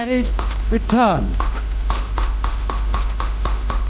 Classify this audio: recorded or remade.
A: remade